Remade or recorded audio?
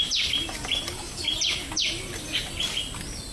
recorded